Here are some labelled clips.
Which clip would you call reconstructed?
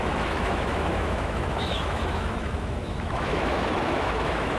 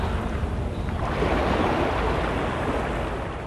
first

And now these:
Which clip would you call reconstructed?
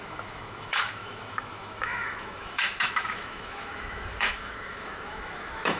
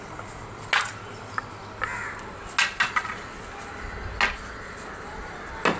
first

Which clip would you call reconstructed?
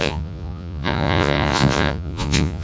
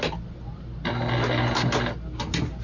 first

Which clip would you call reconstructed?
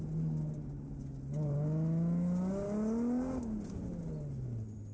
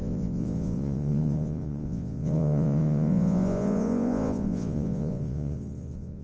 second